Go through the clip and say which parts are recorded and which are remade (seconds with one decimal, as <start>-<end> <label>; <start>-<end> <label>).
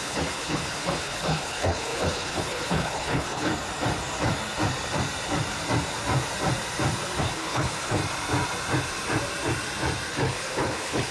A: 0.0-3.5 remade; 3.5-7.2 recorded; 7.2-8.0 remade; 8.0-10.1 recorded; 10.1-11.1 remade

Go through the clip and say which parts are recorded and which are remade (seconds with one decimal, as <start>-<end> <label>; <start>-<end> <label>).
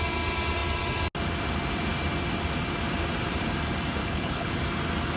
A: 0.0-4.0 recorded; 4.0-4.6 remade; 4.6-5.2 recorded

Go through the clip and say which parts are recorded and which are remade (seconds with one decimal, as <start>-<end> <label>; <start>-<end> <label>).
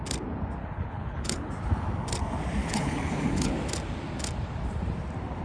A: 0.0-0.6 recorded; 0.6-1.5 remade; 1.5-2.6 recorded; 2.6-3.5 remade; 3.5-5.4 recorded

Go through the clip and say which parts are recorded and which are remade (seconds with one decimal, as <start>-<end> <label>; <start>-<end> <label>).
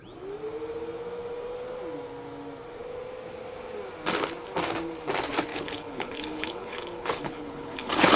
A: 0.0-5.5 recorded; 5.5-8.2 remade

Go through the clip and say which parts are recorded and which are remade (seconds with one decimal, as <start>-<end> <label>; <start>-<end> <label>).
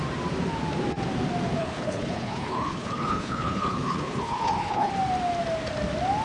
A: 0.0-1.6 recorded; 1.6-4.9 remade; 4.9-6.2 recorded